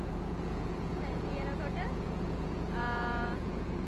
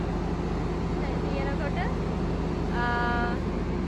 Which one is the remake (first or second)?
first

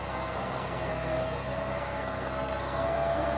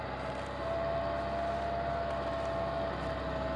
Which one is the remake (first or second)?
first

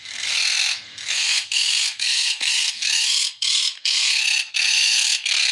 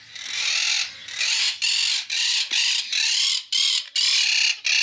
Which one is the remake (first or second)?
first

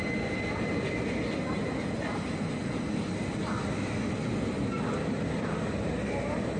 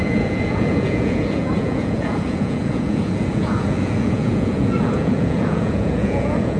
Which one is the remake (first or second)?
second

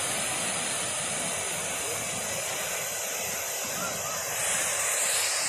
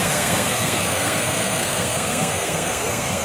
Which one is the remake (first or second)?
second